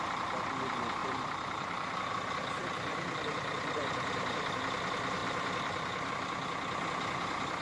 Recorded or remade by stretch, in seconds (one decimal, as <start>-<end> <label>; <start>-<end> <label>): 0.0-1.0 recorded; 1.0-2.1 remade; 2.1-2.9 recorded; 2.9-4.6 remade; 4.6-5.2 recorded; 5.2-6.1 remade; 6.1-7.6 recorded